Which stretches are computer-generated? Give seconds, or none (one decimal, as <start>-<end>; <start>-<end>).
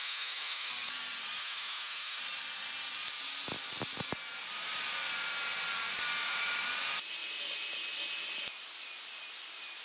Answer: 0.0-0.7; 1.4-2.2; 6.2-6.7